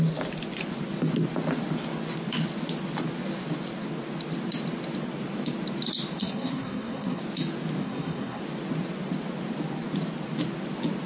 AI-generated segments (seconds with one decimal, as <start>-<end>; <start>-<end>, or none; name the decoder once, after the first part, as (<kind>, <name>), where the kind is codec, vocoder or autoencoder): 6.2-7.2 (codec, SNAC); 7.8-8.4